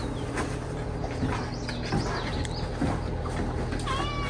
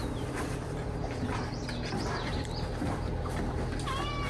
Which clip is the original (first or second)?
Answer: first